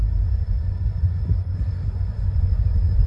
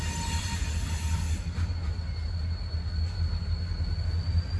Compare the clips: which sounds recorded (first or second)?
second